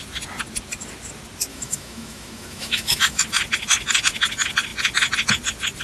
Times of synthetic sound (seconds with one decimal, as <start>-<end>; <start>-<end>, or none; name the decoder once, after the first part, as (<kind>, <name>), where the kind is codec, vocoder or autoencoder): 1.5-3.2 (autoencoder, DAC-VAE)